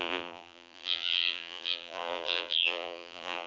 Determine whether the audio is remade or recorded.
remade